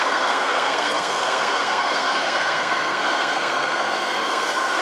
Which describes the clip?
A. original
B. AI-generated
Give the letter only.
B